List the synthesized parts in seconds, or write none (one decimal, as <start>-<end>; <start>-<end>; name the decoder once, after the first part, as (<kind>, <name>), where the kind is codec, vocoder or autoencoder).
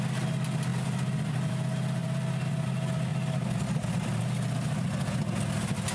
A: 0.7-1.5 (vocoder, BigVGAN v2); 2.0-2.5; 3.1-4.2